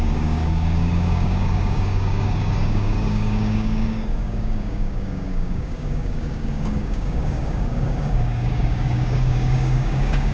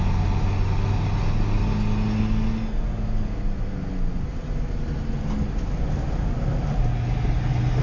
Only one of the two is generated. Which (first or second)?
first